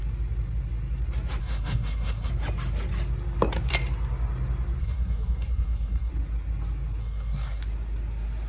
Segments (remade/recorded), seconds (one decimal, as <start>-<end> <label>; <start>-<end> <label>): 0.0-1.4 recorded; 1.4-2.3 remade; 2.3-4.8 recorded; 4.8-6.1 remade; 6.1-7.0 recorded; 7.0-7.6 remade; 7.6-8.5 recorded